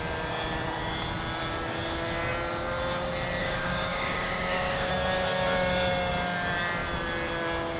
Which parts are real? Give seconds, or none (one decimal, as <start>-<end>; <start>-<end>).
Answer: 0.0-3.4; 4.9-7.8